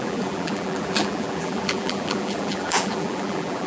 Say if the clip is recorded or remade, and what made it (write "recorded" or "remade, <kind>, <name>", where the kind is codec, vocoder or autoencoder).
remade, vocoder, BigVGAN v2